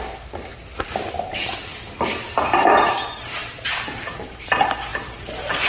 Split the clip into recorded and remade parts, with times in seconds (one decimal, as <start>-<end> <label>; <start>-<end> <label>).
0.0-5.7 recorded